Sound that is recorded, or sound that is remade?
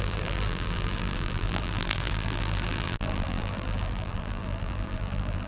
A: remade